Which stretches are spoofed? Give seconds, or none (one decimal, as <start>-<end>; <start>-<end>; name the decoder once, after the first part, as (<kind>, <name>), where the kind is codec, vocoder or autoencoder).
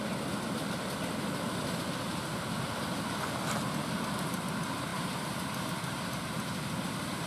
4.9-6.2 (vocoder, BigVGAN v2)